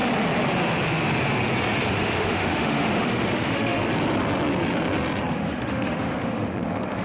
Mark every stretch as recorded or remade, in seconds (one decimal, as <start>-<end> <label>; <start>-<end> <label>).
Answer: 0.0-1.9 recorded; 1.9-3.8 remade; 3.8-5.3 recorded; 5.3-7.0 remade